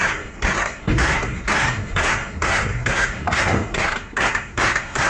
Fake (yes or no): yes